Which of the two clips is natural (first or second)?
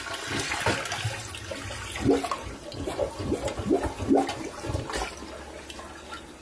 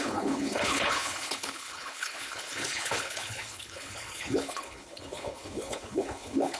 first